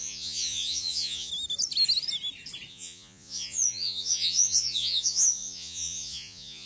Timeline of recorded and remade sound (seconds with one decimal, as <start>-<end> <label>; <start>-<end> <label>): 0.0-1.3 remade; 1.3-2.7 recorded; 2.7-6.7 remade